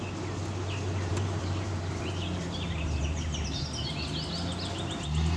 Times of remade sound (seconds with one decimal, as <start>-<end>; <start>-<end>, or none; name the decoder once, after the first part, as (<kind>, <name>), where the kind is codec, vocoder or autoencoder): 1.1-4.3 (vocoder, BigVGAN v2)